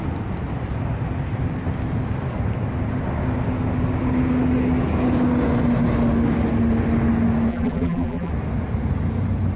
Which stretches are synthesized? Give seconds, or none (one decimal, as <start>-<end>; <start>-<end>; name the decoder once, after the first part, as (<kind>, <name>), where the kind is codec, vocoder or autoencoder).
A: 7.5-8.3 (vocoder, BigVGAN v2)